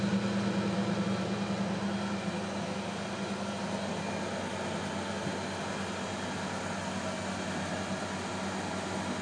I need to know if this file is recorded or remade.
recorded